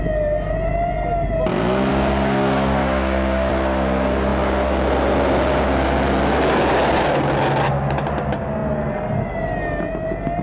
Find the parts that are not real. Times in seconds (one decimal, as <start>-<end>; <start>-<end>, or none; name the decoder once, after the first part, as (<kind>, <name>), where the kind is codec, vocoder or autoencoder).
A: 1.9-3.5 (codec, DAC)